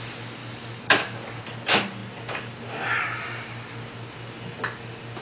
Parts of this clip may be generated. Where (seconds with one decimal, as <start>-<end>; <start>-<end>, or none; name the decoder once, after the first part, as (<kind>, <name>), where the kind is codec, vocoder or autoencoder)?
0.4-1.4 (codec, DAC)